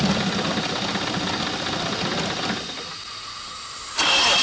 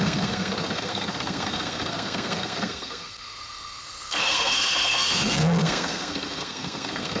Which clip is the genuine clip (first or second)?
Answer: first